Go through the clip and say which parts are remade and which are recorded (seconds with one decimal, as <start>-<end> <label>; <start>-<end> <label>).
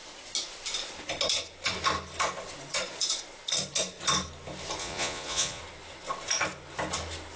0.0-4.8 recorded; 4.8-5.6 remade; 5.6-7.4 recorded